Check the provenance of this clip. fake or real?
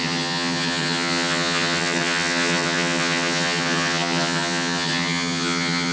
fake